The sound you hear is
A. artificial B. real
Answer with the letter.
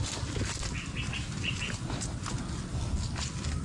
B